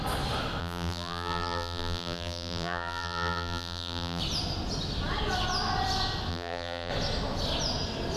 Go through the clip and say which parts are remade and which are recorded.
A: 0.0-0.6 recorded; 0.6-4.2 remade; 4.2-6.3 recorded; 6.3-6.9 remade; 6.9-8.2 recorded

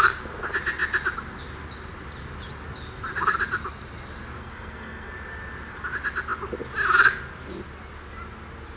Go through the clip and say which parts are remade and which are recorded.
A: 0.0-4.4 recorded; 4.4-5.1 remade; 5.1-8.8 recorded

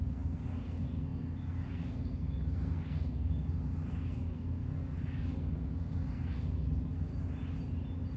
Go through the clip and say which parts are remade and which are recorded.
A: 0.0-7.1 remade; 7.1-8.2 recorded

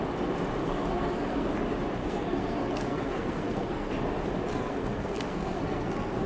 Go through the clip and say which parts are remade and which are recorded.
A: 0.0-0.6 recorded; 0.6-1.5 remade; 1.5-2.0 recorded; 2.0-3.9 remade; 3.9-4.5 recorded; 4.5-6.3 remade